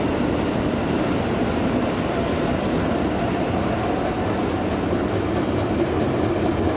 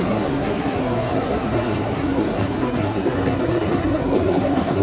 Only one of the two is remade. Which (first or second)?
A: second